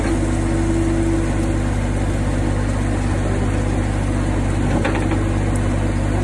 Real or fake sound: real